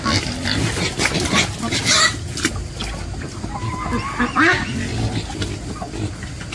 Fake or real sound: real